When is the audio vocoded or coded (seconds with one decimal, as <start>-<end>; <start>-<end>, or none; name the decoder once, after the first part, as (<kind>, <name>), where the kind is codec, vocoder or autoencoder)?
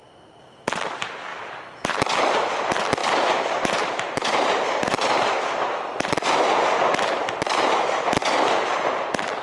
1.3-1.9 (vocoder, BigVGAN v2); 3.0-7.7